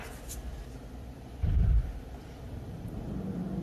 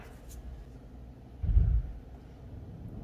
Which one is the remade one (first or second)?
first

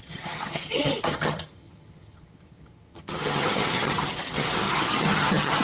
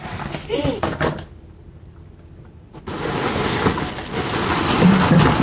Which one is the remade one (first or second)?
first